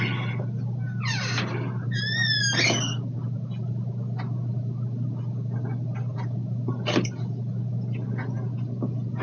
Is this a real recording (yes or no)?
yes